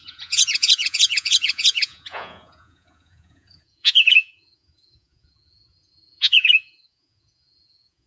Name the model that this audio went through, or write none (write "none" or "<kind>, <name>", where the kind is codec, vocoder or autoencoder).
vocoder, Vocos